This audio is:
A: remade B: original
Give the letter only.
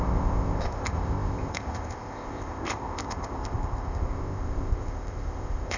A